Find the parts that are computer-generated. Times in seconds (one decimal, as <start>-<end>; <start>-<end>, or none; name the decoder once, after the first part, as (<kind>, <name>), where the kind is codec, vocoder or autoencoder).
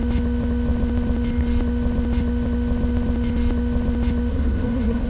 4.3-5.1 (codec, SNAC)